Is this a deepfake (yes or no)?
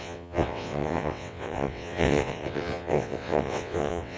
yes